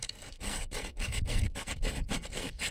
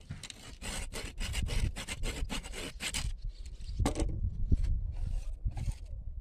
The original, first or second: second